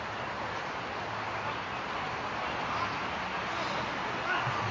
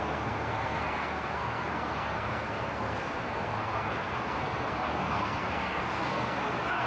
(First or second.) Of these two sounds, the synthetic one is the second